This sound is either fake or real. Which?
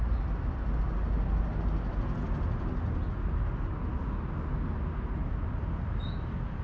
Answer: real